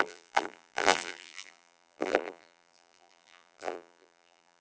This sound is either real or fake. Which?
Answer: fake